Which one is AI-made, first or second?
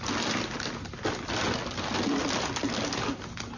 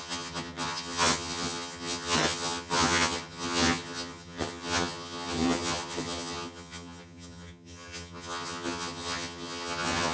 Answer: second